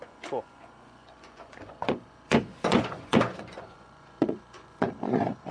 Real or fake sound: fake